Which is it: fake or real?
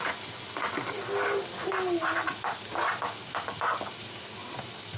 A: real